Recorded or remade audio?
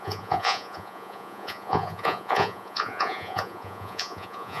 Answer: remade